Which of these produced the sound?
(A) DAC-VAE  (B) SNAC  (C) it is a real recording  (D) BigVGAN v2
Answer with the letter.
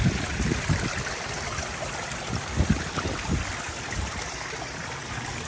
C